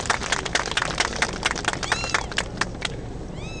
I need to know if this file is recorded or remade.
recorded